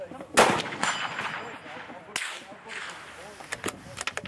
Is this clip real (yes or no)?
yes